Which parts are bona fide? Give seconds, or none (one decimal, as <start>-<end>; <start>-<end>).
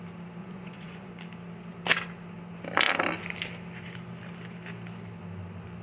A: 0.0-0.4; 1.1-5.8